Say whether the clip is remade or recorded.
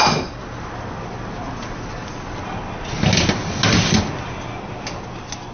recorded